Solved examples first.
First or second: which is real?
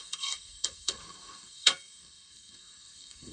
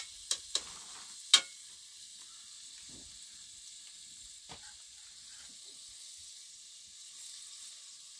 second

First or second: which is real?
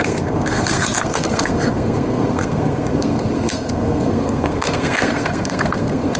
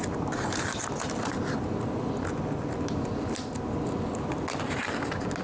second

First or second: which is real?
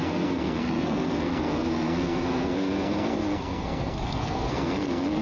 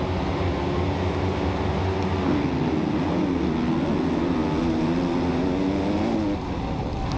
second